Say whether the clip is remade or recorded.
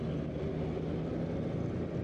recorded